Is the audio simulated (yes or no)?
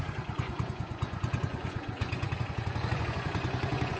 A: yes